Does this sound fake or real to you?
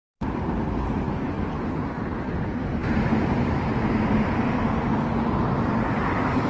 real